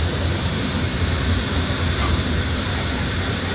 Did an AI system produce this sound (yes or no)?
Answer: yes